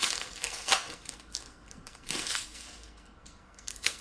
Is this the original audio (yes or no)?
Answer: no